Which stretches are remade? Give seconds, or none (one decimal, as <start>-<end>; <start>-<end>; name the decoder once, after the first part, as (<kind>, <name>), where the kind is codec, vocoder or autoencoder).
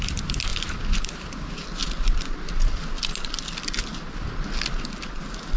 none